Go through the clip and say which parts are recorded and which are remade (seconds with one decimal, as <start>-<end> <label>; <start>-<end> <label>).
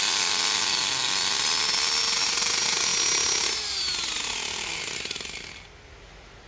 0.0-6.5 recorded